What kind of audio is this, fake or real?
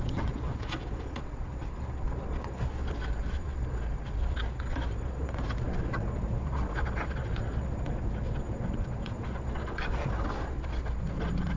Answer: fake